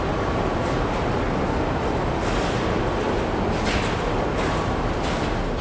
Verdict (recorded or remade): recorded